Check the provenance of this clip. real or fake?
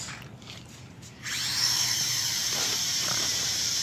fake